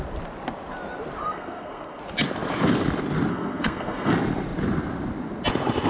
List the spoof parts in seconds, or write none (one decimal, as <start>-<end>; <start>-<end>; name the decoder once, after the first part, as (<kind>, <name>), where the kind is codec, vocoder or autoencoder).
1.2-2.0 (codec, SNAC); 3.3-4.1